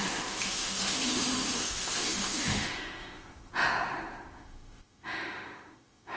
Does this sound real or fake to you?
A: fake